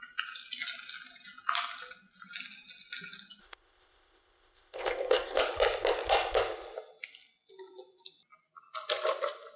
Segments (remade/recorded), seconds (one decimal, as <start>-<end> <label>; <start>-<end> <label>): 0.0-3.4 recorded; 3.4-5.4 remade; 5.4-9.6 recorded